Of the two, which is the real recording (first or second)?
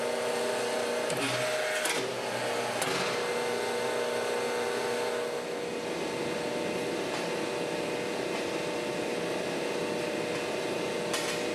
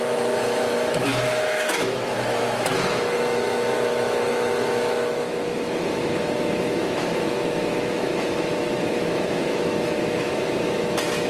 first